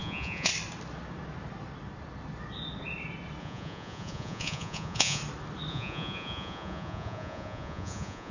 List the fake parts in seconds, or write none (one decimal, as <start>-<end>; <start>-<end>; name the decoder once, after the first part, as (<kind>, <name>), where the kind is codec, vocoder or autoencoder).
0.0-0.5 (vocoder, Vocos); 3.4-5.2; 5.7-8.3